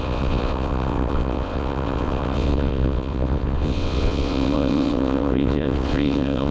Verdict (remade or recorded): remade